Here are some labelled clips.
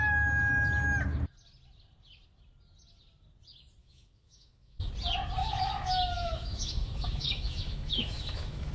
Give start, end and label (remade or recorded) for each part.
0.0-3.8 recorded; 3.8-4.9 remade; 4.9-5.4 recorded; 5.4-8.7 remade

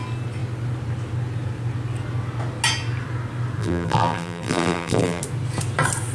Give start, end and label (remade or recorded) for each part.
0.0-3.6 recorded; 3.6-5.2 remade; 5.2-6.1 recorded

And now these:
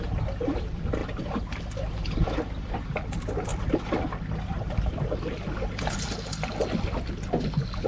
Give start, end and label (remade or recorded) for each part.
0.0-1.0 recorded; 1.0-2.7 remade; 2.7-7.9 recorded

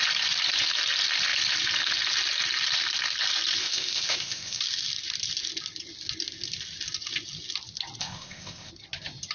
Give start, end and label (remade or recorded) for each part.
0.0-3.6 recorded; 3.6-4.6 remade; 4.6-8.0 recorded; 8.0-8.7 remade; 8.7-9.3 recorded